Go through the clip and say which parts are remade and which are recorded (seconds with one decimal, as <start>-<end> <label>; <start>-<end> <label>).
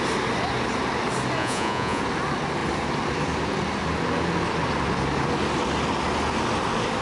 0.0-1.4 recorded; 1.4-2.0 remade; 2.0-7.0 recorded